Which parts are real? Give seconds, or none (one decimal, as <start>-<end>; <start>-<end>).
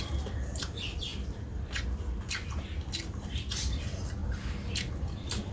4.2-4.9